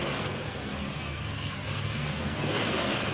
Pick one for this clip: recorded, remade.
remade